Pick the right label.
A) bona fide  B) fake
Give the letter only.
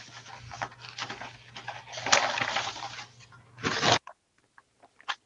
A